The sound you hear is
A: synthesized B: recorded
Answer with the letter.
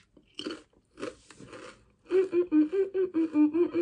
B